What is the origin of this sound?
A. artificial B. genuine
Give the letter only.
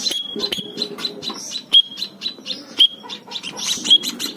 A